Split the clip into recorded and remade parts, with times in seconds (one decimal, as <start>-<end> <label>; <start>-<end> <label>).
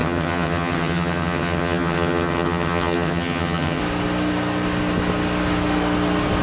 0.0-3.8 remade; 3.8-6.4 recorded